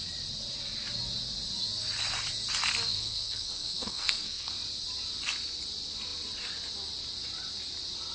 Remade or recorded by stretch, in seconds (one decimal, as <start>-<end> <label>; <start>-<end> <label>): 0.0-2.9 recorded; 2.9-4.5 remade; 4.5-8.1 recorded